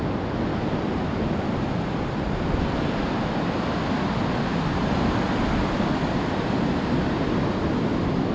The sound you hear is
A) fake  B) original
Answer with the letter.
B